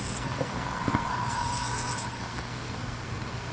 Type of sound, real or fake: fake